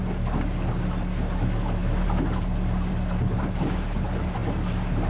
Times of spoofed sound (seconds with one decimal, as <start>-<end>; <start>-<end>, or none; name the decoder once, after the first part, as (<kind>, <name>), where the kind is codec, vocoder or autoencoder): none